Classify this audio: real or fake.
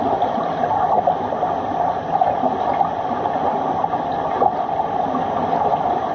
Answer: real